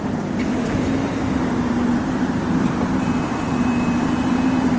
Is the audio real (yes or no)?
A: no